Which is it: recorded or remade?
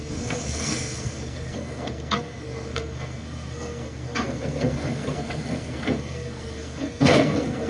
remade